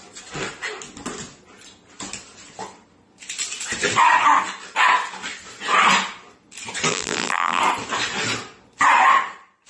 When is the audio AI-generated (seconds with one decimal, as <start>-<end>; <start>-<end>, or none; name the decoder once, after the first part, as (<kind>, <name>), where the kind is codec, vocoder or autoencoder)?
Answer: 6.9-7.6 (vocoder, BigVGAN v2)